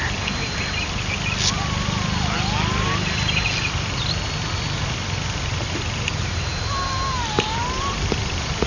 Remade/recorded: recorded